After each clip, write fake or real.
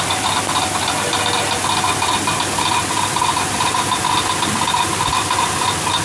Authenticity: real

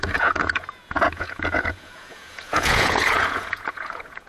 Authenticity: fake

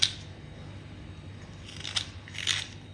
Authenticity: real